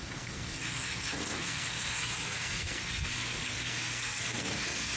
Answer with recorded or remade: remade